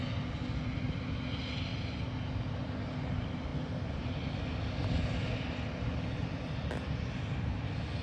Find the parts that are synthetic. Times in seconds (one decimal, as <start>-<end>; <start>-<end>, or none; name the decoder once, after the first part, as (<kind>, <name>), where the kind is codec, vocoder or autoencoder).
none